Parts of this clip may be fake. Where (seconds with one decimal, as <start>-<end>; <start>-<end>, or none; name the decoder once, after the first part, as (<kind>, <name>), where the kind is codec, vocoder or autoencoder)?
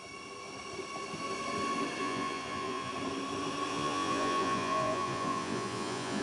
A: 2.0-2.9 (vocoder, Vocos); 3.7-6.2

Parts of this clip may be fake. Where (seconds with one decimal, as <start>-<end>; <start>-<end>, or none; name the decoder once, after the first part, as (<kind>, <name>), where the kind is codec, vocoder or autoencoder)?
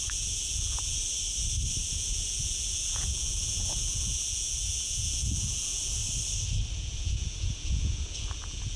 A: 0.0-1.0 (vocoder, Vocos); 1.9-6.0; 6.7-8.8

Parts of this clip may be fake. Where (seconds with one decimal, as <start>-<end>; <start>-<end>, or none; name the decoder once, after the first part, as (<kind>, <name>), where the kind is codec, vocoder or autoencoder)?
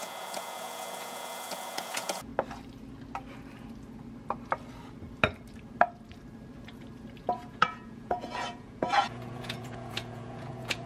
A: 0.0-2.3 (vocoder, Vocos); 7.2-10.9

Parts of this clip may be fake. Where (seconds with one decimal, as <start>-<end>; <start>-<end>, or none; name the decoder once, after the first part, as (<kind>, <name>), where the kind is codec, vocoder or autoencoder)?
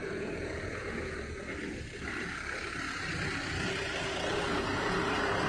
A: 0.0-1.4 (vocoder, Vocos); 4.5-5.0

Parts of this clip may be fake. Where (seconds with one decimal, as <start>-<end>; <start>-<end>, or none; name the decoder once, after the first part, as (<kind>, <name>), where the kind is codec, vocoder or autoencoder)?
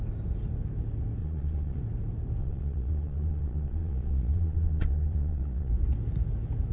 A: 1.2-1.8 (vocoder, Vocos); 2.4-5.7